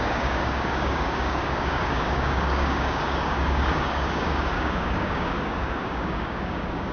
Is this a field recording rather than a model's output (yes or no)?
no